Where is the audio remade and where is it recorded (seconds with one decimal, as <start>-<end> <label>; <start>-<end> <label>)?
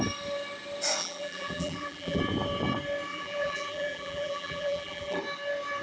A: 0.0-1.0 recorded; 1.0-2.2 remade; 2.2-3.1 recorded; 3.1-5.2 remade; 5.2-5.8 recorded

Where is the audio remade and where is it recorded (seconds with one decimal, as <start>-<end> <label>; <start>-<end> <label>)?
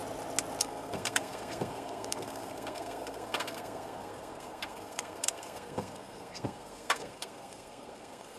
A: 0.0-0.6 recorded; 0.6-8.4 remade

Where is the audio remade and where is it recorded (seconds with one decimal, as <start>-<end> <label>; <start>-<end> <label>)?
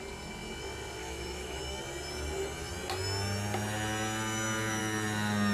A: 0.0-1.0 recorded; 1.0-1.6 remade; 1.6-5.5 recorded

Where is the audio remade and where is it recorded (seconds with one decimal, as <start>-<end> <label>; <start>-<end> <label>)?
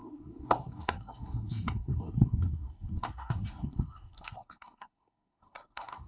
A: 0.0-6.1 remade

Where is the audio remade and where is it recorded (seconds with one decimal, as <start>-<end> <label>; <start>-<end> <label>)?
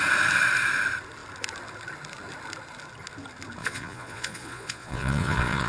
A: 0.0-3.6 recorded; 3.6-5.7 remade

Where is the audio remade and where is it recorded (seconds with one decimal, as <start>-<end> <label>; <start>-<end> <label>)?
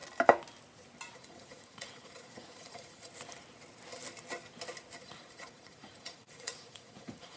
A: 0.0-1.1 recorded; 1.1-3.1 remade; 3.1-5.0 recorded; 5.0-7.4 remade